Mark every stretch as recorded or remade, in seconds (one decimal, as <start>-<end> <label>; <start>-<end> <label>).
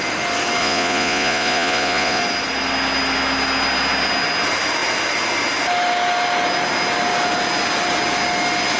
0.0-0.6 recorded; 0.6-2.2 remade; 2.2-8.8 recorded